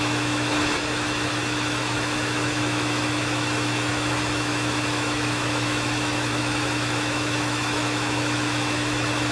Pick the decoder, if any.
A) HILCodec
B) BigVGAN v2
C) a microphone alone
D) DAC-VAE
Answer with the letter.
D